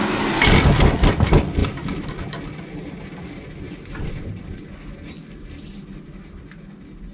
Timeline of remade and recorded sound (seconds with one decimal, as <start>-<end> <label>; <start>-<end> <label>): 0.0-7.1 recorded